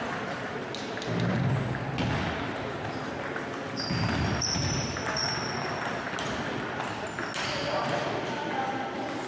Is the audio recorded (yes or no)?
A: yes